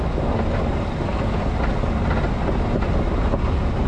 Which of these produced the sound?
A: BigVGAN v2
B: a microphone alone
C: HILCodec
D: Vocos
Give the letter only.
B